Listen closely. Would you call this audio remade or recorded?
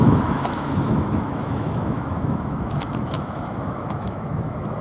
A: remade